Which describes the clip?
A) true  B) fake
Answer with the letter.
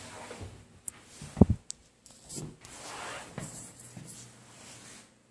A